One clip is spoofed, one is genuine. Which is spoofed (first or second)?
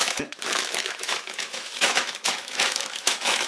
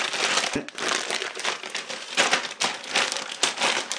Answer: first